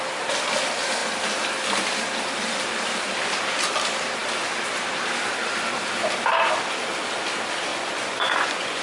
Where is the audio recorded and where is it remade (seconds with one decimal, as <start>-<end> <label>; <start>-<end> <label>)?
0.0-7.7 recorded; 7.7-8.8 remade